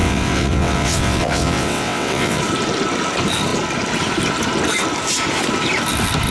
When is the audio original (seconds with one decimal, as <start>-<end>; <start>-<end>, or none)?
2.4-6.3